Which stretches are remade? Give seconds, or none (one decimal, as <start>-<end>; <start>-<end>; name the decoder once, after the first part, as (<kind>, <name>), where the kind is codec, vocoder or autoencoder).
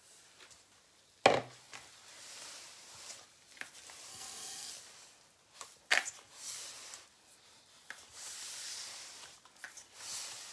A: 4.1-4.7 (codec, SNAC)